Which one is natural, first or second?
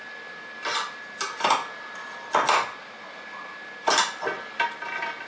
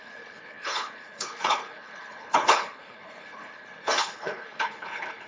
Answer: first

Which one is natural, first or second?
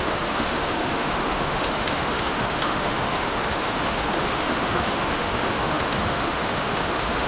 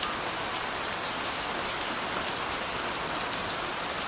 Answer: second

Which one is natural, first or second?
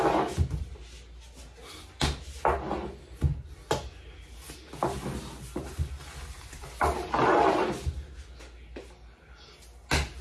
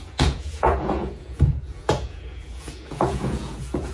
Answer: first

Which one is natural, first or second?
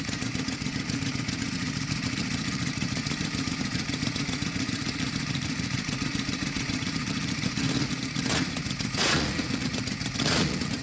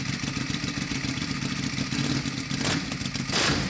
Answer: second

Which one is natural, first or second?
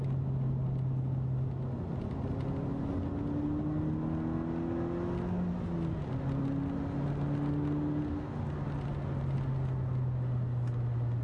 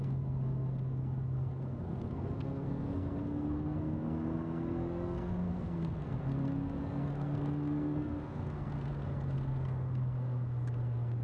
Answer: first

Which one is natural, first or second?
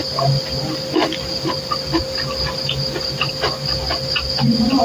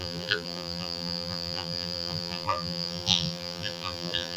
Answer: first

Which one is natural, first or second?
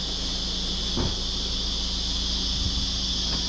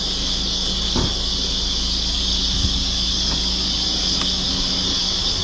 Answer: first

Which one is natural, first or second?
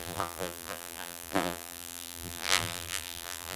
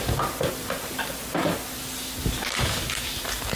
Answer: second